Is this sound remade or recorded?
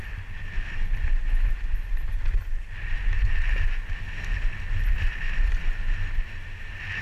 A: recorded